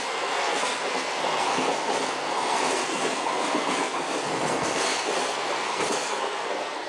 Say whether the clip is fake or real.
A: fake